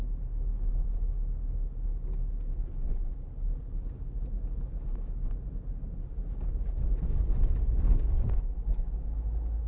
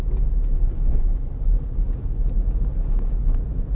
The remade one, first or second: second